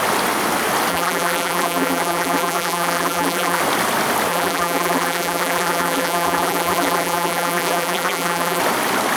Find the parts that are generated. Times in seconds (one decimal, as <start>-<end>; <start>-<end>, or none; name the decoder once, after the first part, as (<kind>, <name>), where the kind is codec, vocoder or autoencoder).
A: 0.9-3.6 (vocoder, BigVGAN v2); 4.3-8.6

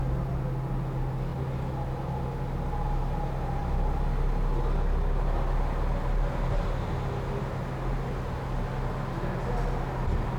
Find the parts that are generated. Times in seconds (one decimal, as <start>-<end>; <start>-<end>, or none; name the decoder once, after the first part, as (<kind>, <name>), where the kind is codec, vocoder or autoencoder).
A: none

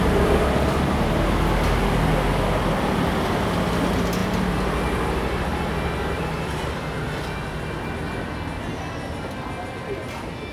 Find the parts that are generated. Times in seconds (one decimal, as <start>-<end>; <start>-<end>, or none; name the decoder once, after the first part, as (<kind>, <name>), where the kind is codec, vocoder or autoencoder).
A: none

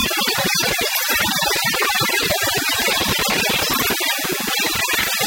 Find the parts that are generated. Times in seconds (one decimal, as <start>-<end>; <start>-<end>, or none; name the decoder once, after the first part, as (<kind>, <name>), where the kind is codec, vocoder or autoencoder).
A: 0.0-3.2 (vocoder, BigVGAN v2)